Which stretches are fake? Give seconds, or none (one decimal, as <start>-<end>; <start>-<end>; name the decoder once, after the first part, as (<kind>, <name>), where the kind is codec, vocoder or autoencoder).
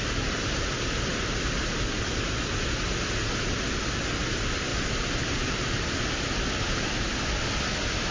none